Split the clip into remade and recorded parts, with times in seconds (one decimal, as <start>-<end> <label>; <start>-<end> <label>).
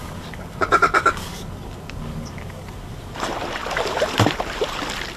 0.0-3.1 remade; 3.1-5.2 recorded